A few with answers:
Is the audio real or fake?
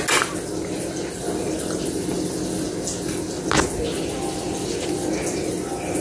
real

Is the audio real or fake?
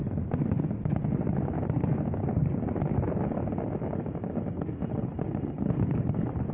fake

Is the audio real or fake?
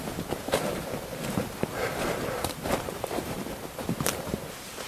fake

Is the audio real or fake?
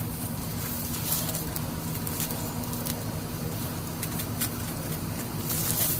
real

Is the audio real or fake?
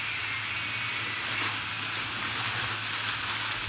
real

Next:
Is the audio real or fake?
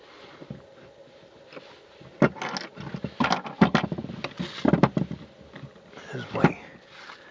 real